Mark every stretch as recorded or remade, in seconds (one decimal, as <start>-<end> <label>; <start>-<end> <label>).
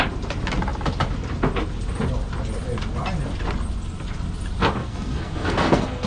0.0-4.8 recorded; 4.8-6.1 remade